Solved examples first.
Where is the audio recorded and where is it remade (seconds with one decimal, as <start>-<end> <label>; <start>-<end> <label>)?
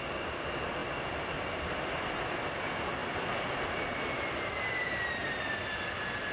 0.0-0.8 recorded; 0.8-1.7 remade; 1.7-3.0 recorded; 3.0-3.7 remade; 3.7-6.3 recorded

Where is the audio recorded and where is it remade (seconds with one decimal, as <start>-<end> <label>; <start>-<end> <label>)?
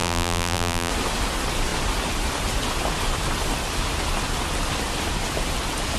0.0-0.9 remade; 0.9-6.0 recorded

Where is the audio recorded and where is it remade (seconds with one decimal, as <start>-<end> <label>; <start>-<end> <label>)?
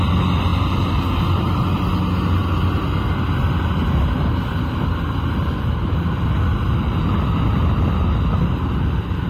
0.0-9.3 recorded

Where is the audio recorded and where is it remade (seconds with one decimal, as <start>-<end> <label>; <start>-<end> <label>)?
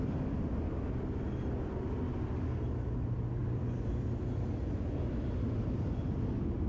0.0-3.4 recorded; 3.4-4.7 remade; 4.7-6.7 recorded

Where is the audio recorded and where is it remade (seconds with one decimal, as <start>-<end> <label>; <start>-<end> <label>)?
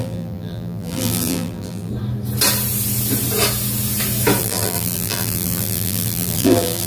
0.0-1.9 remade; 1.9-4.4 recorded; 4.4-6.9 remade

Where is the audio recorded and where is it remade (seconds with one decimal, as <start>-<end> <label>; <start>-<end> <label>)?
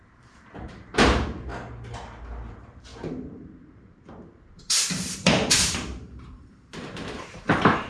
0.0-1.5 remade; 1.5-2.5 recorded; 2.5-7.9 remade